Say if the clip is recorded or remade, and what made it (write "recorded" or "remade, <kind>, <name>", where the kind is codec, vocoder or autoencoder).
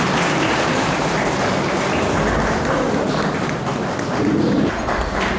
recorded